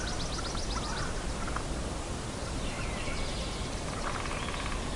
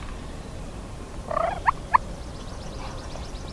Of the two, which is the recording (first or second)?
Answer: first